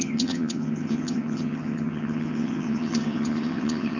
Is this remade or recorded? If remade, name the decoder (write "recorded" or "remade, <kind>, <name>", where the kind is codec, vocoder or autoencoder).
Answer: remade, vocoder, HiFi-GAN